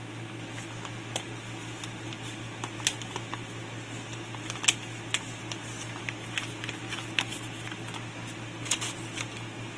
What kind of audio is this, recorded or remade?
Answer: recorded